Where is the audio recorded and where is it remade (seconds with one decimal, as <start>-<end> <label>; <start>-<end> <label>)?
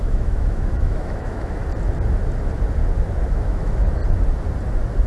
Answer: 0.0-1.6 remade; 1.6-3.3 recorded; 3.3-4.0 remade; 4.0-5.1 recorded